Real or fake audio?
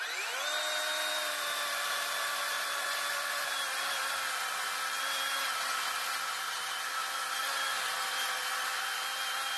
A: real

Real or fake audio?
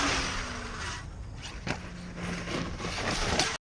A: real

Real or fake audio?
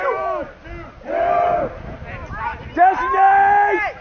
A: real